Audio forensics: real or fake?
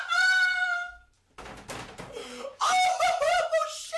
real